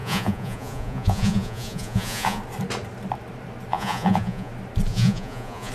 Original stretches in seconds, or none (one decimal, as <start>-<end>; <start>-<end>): 2.4-3.7; 4.5-4.9

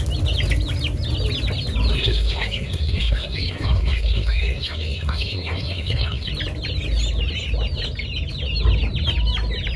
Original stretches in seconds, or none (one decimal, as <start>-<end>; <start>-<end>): 0.0-1.9; 6.3-9.8

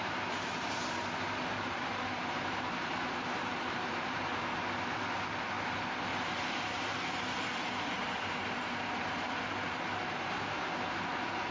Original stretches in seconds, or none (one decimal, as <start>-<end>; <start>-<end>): 4.5-6.1; 9.5-11.5

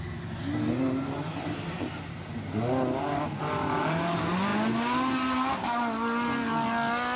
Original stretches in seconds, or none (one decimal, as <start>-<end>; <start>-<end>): 0.0-7.2